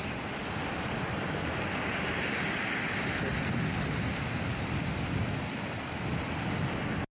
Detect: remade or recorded recorded